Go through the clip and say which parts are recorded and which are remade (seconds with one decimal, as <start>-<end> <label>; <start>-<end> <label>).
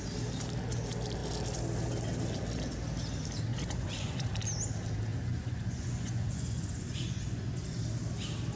0.0-3.5 recorded; 3.5-4.3 remade; 4.3-5.1 recorded; 5.1-7.8 remade; 7.8-8.6 recorded